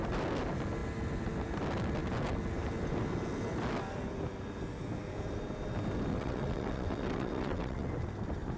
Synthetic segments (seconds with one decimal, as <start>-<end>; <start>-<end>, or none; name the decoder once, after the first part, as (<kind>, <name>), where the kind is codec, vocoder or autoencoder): 6.1-7.9 (vocoder, WaveNeXt)